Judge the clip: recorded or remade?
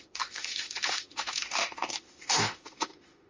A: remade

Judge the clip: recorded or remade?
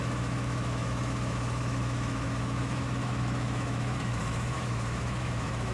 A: remade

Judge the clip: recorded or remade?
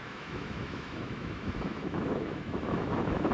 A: remade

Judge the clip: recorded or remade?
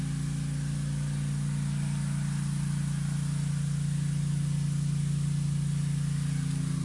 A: recorded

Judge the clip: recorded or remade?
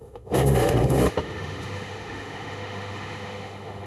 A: remade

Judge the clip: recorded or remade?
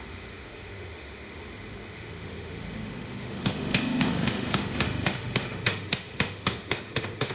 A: remade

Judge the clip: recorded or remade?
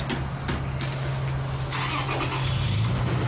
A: recorded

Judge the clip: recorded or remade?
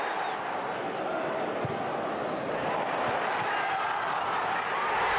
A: recorded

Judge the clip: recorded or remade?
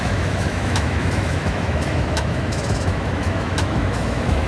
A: remade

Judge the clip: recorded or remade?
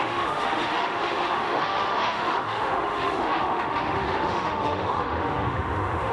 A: remade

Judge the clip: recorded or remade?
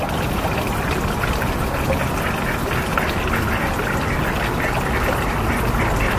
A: recorded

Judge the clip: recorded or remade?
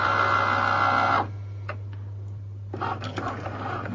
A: recorded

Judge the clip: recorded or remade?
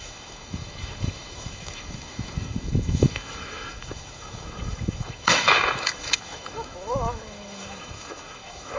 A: remade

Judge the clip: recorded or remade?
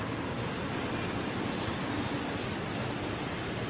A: recorded